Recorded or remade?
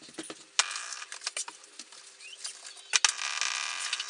recorded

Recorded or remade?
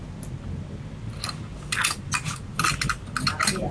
recorded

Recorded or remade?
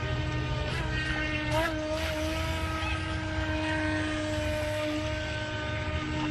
recorded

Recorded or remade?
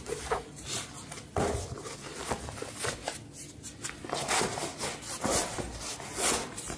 recorded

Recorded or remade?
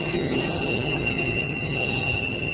remade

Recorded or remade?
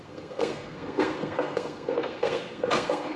remade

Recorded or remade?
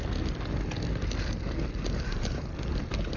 recorded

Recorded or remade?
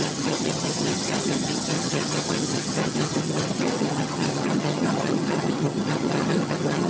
remade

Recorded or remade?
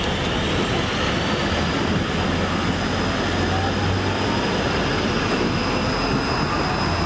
recorded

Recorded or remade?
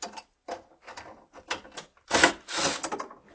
recorded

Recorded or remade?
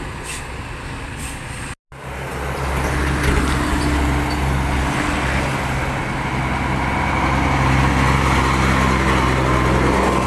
recorded